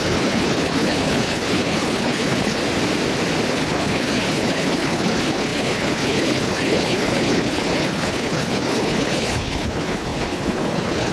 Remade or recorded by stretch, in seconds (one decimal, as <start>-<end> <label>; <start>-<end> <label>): 0.0-2.6 remade; 2.6-3.5 recorded; 3.5-11.1 remade